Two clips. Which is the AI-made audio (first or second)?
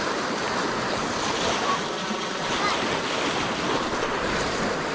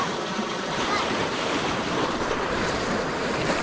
second